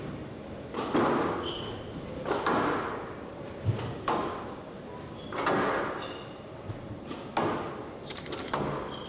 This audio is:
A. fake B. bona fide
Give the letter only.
B